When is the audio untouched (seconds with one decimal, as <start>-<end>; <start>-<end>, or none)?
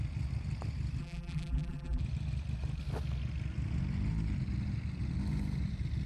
0.0-1.0; 2.0-6.1